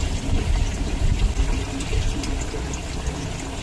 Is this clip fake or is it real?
real